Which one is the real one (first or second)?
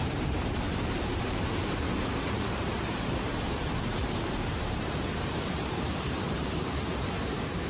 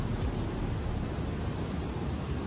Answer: second